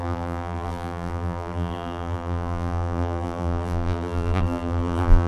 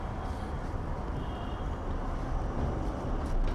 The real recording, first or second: second